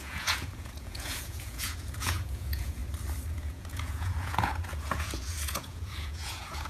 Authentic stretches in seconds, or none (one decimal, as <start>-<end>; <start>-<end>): 2.8-3.3